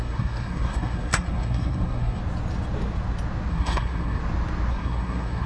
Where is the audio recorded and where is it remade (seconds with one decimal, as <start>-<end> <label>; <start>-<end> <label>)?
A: 0.0-2.2 remade; 2.2-3.5 recorded; 3.5-4.2 remade; 4.2-4.7 recorded; 4.7-5.5 remade

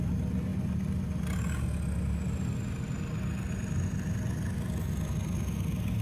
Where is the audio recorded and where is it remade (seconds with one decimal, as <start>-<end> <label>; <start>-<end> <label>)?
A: 0.0-6.0 recorded

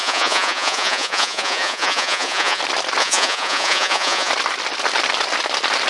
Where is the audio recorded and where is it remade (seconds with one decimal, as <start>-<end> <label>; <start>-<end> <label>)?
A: 0.0-2.6 remade; 2.6-3.0 recorded; 3.0-4.3 remade; 4.3-5.9 recorded

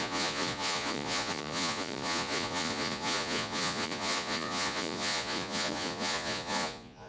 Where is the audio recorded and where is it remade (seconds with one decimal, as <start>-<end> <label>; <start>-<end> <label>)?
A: 0.0-7.1 remade